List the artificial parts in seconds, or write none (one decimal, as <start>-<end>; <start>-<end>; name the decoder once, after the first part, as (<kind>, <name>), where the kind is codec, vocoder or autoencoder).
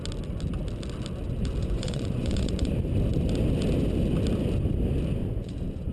1.6-2.7 (vocoder, Vocos); 5.2-5.9